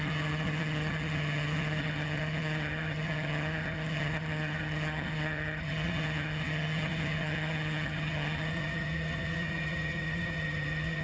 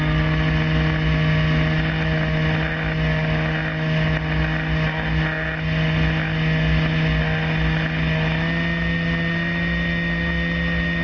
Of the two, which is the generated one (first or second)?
first